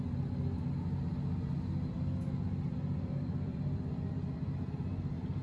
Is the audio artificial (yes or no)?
no